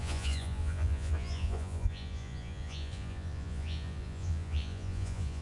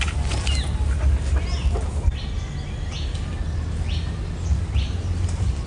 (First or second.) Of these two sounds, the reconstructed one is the first